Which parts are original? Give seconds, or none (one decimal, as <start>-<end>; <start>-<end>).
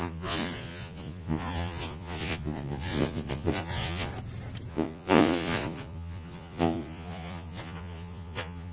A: 4.1-4.7